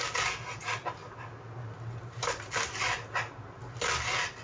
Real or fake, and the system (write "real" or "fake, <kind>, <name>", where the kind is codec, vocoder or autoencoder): real